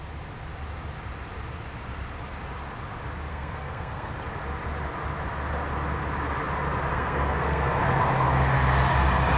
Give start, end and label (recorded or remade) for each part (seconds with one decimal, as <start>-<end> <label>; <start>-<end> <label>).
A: 0.0-3.3 recorded; 3.3-4.1 remade; 4.1-6.9 recorded; 6.9-7.8 remade; 7.8-9.4 recorded